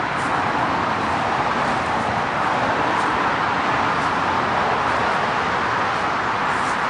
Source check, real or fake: real